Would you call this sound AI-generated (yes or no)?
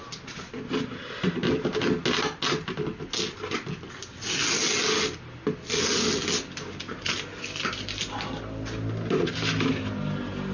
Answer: no